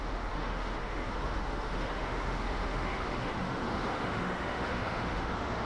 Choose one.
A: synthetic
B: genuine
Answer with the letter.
A